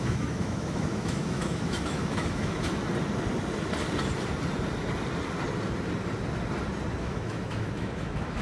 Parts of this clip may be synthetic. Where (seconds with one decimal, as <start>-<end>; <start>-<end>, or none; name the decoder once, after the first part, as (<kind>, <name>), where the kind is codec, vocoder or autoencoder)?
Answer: 0.0-2.8 (autoencoder, DAC-VAE); 7.0-8.4